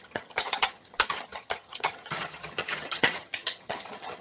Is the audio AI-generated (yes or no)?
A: yes